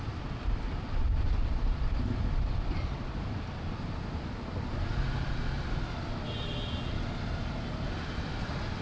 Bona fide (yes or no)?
yes